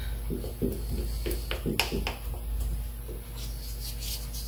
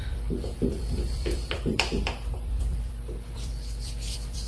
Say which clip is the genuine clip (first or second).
first